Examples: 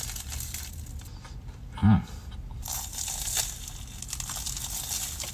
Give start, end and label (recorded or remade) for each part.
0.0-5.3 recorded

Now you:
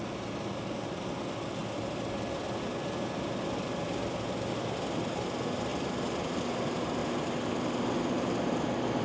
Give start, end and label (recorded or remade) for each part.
0.0-7.0 recorded; 7.0-7.5 remade; 7.5-9.0 recorded

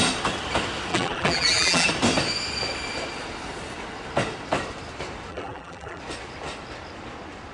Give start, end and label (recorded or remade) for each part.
0.0-0.9 recorded; 0.9-1.9 remade; 1.9-5.3 recorded; 5.3-6.0 remade; 6.0-7.5 recorded

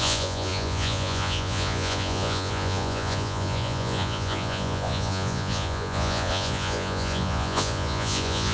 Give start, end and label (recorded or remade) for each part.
0.0-8.5 remade

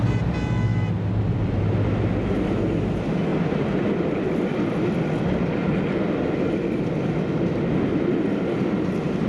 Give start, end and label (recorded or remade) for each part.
0.0-9.3 recorded

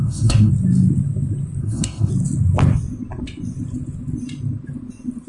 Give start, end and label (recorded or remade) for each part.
0.0-0.5 remade; 0.5-1.6 recorded; 1.6-2.1 remade; 2.1-5.3 recorded

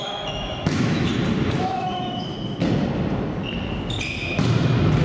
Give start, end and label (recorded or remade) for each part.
0.0-1.1 remade; 1.1-1.6 recorded; 1.6-2.3 remade; 2.3-5.0 recorded

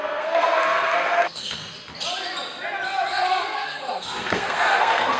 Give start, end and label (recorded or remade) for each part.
0.0-1.6 remade; 1.6-3.1 recorded; 3.1-5.2 remade